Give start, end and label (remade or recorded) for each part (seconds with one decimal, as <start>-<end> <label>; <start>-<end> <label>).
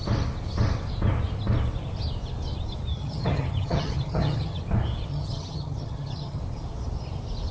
0.0-2.9 recorded; 2.9-4.6 remade; 4.6-5.1 recorded; 5.1-6.4 remade; 6.4-7.5 recorded